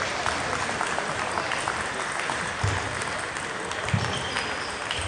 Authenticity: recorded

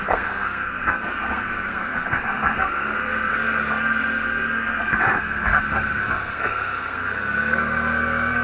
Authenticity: remade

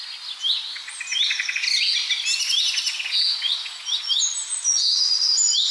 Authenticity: recorded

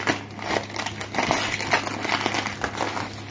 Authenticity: recorded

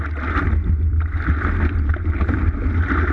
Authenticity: recorded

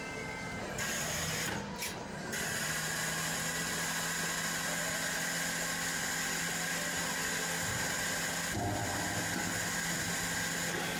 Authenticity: recorded